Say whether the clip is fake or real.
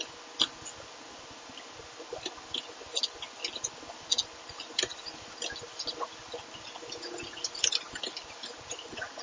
real